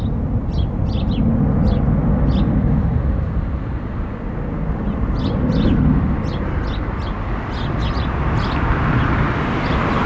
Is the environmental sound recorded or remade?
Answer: recorded